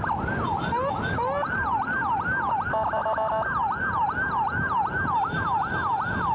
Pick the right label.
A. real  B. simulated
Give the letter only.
A